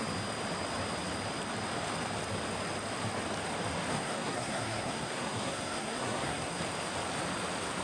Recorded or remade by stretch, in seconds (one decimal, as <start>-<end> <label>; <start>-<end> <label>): 0.0-3.9 recorded; 3.9-6.6 remade; 6.6-7.8 recorded